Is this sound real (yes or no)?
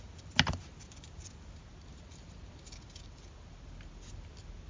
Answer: yes